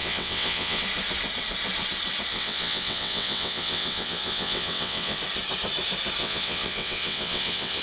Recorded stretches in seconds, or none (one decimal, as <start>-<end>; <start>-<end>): 0.8-2.3; 5.2-6.2